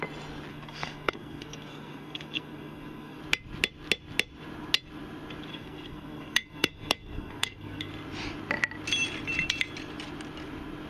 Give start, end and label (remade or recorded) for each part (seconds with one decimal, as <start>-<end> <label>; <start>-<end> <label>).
0.0-0.5 recorded; 0.5-3.2 remade; 3.2-5.5 recorded; 5.5-7.9 remade; 7.9-10.9 recorded